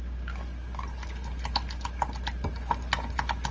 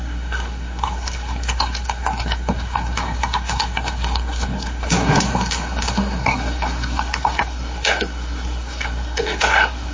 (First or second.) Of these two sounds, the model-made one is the second